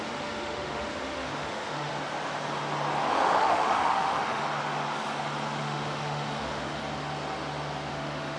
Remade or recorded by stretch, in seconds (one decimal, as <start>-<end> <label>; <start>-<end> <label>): 0.0-1.9 remade; 1.9-3.1 recorded; 3.1-4.4 remade; 4.4-5.6 recorded; 5.6-6.8 remade; 6.8-7.9 recorded; 7.9-8.4 remade